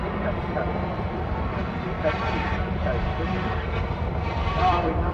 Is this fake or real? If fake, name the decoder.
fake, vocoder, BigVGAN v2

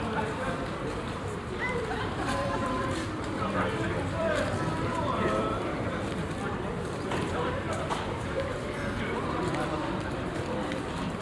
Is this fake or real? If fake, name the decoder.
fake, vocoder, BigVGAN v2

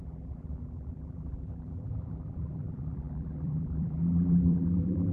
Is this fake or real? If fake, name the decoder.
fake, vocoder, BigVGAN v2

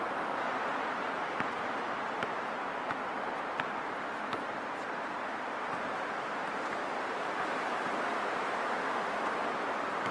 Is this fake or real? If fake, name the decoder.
real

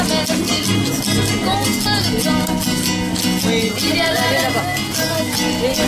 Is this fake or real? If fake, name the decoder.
real